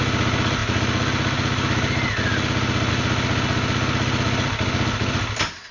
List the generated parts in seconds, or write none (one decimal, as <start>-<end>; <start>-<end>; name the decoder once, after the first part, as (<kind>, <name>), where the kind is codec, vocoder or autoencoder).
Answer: none